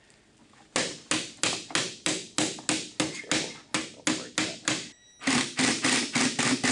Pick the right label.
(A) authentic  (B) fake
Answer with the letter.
A